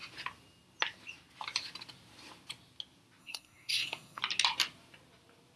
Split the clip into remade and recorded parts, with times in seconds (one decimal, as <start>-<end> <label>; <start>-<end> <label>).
0.0-3.2 recorded; 3.2-4.2 remade; 4.2-5.6 recorded